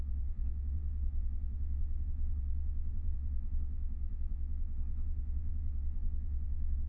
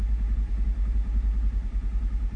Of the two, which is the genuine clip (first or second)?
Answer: second